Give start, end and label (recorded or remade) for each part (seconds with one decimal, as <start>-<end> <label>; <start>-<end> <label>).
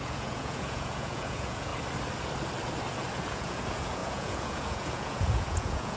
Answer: 0.0-1.7 remade; 1.7-3.1 recorded; 3.1-6.0 remade